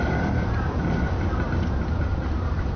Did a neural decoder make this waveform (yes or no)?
yes